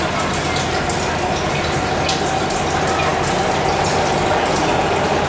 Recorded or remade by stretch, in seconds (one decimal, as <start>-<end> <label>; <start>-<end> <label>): 0.0-5.3 recorded